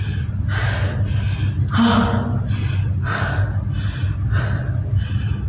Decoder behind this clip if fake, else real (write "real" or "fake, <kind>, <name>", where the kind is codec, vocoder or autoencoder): real